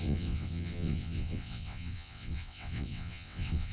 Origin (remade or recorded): remade